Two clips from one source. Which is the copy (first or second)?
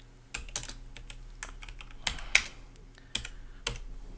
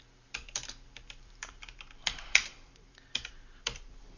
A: second